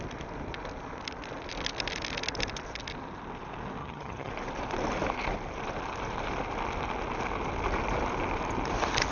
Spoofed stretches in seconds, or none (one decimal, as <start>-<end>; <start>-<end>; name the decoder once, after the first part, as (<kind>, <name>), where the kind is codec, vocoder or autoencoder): 3.8-4.3 (vocoder, HiFi-GAN)